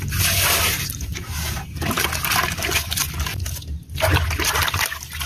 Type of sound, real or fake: real